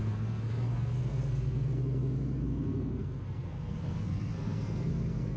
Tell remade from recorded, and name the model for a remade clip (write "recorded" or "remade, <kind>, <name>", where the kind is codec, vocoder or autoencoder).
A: remade, codec, SNAC